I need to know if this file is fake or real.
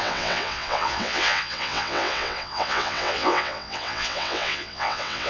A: fake